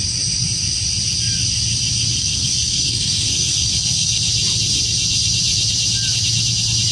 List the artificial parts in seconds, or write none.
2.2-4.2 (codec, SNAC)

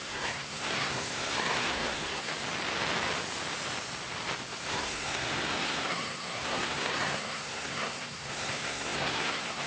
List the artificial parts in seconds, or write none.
0.0-2.3 (codec, SNAC); 4.7-9.7

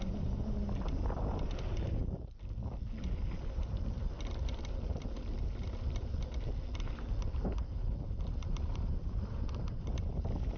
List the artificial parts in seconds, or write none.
8.4-10.6 (vocoder, BigVGAN v2)

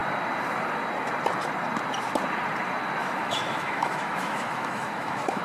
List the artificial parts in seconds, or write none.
3.0-5.4 (autoencoder, DAC-VAE)

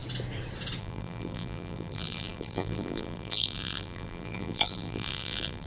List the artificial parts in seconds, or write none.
0.8-5.7 (vocoder, BigVGAN v2)